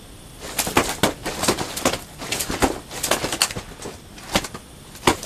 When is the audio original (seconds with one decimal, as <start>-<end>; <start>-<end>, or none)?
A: 0.0-5.3